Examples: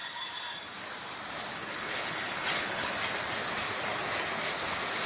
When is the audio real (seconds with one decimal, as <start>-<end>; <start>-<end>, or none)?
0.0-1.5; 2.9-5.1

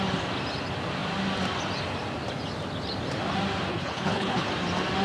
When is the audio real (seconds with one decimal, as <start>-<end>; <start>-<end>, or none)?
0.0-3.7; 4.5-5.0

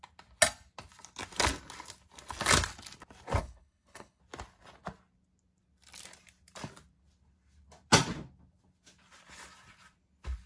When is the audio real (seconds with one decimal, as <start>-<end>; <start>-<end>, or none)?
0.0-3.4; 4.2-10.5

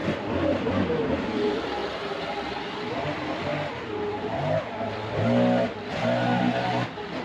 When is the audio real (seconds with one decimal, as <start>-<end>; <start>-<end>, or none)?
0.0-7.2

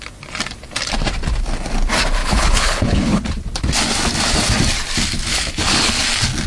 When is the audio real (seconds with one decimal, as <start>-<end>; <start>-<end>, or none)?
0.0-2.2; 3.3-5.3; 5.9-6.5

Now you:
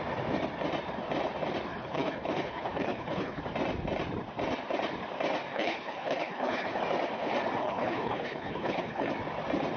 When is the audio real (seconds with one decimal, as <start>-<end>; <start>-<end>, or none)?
0.0-1.7; 3.4-5.5; 6.8-7.6; 9.1-9.8

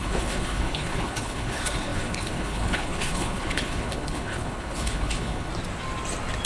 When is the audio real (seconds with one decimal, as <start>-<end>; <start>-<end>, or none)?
5.5-6.5